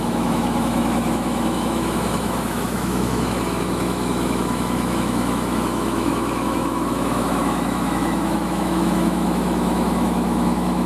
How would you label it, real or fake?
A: fake